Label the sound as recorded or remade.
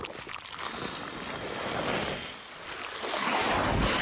recorded